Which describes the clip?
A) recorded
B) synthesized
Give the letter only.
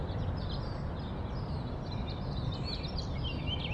A